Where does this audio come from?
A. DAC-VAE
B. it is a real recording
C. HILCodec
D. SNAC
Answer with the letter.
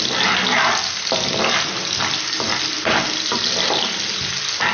B